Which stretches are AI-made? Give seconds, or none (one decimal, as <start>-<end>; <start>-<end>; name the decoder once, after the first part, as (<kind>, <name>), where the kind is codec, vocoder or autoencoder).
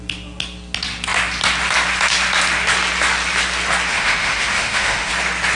3.9-5.1 (autoencoder, DAC-VAE)